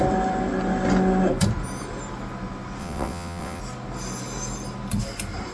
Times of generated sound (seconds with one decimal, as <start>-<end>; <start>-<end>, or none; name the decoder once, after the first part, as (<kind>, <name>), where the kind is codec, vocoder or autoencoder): 2.8-3.6 (vocoder, WaveNeXt)